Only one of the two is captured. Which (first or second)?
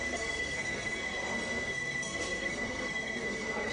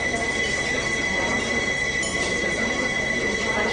second